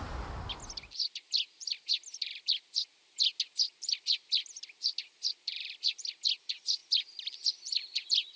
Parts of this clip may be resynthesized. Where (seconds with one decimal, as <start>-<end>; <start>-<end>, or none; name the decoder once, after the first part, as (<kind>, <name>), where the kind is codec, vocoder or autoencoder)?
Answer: none